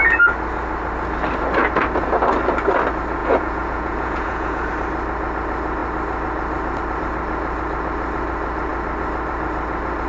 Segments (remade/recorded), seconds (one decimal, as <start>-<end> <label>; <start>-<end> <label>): 0.0-3.2 recorded; 3.2-4.7 remade; 4.7-10.1 recorded